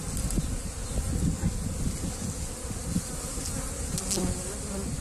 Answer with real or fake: real